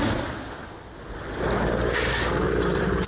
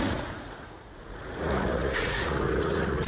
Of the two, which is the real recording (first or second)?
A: first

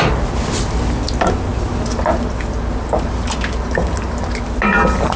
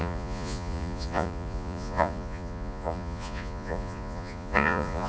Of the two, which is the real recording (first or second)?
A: first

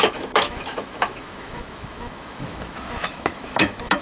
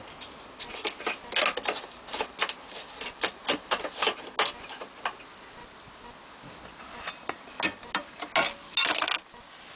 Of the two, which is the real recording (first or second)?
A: second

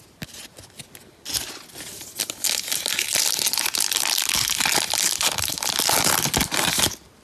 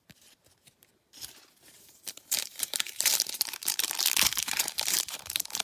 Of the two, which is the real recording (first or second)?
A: first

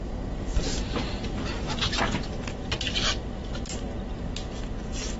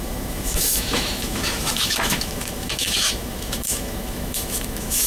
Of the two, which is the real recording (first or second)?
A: first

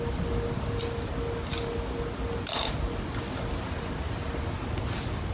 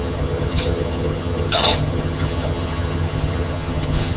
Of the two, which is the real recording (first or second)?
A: first